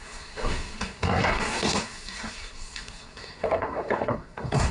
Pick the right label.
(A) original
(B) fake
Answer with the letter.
B